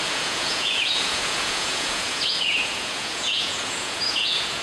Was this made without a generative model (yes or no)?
no